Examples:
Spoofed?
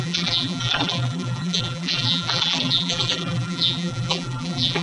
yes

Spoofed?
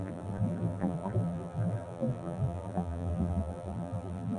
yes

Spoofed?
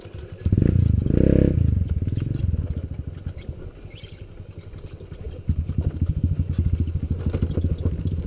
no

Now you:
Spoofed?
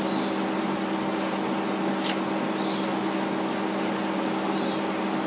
no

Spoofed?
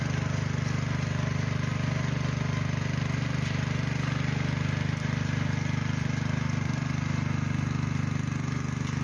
no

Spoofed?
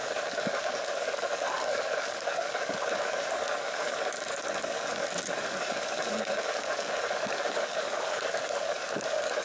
yes